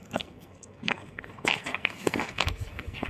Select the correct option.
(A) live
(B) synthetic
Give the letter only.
B